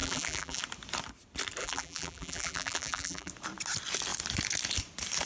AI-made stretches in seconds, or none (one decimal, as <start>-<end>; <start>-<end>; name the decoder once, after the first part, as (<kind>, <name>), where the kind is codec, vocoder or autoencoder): 0.0-0.6 (vocoder, BigVGAN v2); 1.6-3.3